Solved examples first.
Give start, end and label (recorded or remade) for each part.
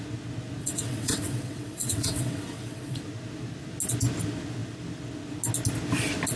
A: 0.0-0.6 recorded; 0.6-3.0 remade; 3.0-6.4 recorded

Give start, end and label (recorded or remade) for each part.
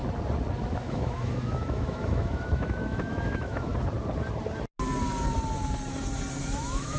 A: 0.0-0.7 recorded; 0.7-3.7 remade; 3.7-6.4 recorded; 6.4-7.0 remade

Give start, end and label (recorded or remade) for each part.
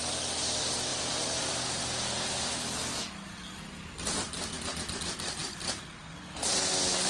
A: 0.0-7.1 recorded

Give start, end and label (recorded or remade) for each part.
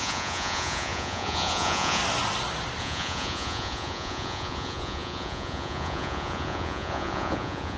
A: 0.0-2.0 remade; 2.0-2.8 recorded; 2.8-7.8 remade